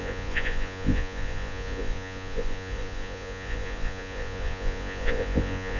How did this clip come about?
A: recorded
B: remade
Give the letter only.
B